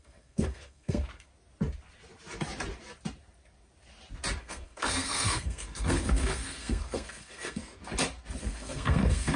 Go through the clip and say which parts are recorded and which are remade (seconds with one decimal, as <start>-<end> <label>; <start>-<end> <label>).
0.0-1.3 remade; 1.3-4.4 recorded; 4.4-7.8 remade; 7.8-8.4 recorded; 8.4-9.4 remade